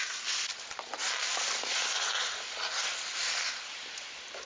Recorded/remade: recorded